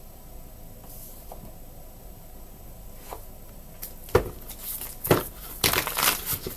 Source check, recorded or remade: recorded